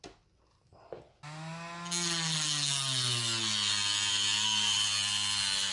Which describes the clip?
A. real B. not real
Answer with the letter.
A